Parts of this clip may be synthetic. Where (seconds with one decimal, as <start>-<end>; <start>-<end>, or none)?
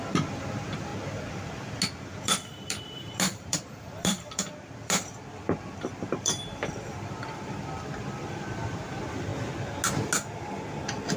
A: 0.0-0.9; 2.0-9.3